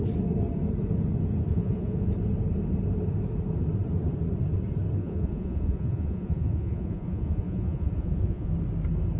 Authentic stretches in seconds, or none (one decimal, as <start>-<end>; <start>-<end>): 0.0-1.5; 2.1-5.0; 8.5-9.2